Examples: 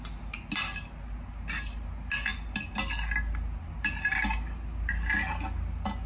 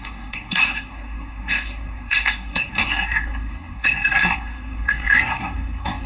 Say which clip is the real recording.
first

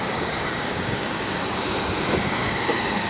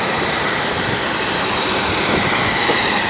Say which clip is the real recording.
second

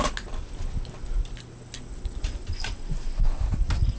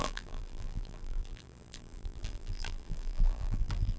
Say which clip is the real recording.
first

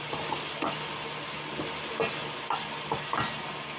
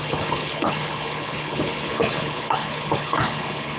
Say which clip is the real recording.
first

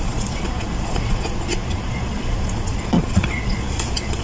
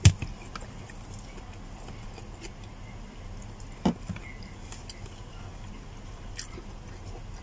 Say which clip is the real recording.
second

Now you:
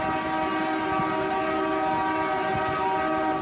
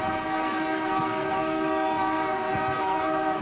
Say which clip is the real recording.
first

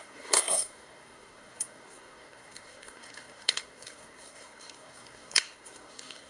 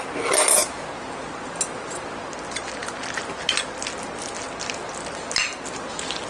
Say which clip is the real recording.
second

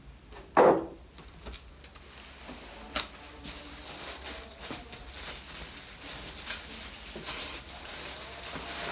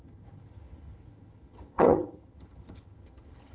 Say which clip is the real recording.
first